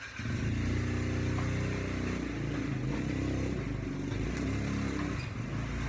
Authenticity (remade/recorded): recorded